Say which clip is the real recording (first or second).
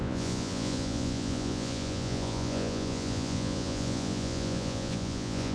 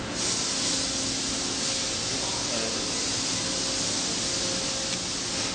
second